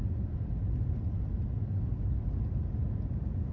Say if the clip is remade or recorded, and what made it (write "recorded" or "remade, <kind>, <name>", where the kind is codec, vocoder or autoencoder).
recorded